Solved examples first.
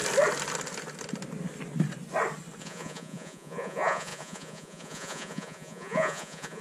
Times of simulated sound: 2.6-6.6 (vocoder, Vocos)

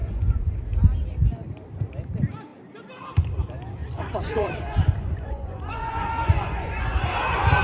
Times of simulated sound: 0.0-0.6 (vocoder, Vocos); 3.8-6.8